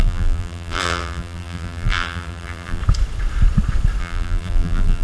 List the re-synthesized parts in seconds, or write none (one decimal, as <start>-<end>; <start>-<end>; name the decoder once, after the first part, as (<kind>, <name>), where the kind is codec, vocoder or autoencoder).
0.0-2.8 (vocoder, BigVGAN v2); 4.0-5.0